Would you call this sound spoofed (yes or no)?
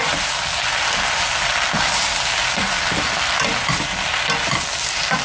no